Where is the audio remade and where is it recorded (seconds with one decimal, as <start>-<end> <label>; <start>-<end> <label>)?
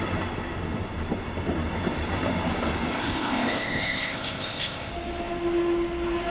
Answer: 0.0-2.9 recorded; 2.9-4.9 remade; 4.9-6.3 recorded